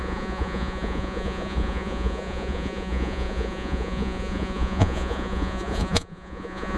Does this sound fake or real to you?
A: fake